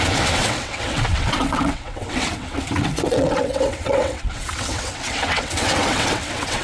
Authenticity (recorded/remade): remade